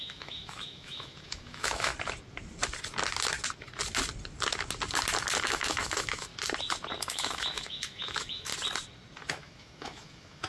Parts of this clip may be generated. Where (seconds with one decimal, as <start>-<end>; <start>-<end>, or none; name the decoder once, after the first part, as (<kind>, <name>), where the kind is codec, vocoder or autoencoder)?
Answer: 0.0-1.9 (autoencoder, DAC-VAE); 5.4-6.3; 7.0-8.5; 9.3-10.5